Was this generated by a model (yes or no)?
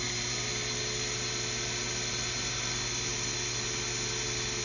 no